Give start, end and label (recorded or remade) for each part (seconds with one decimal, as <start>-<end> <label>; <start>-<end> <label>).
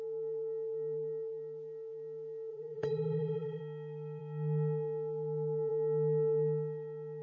0.0-2.5 recorded; 2.5-3.6 remade; 3.6-7.2 recorded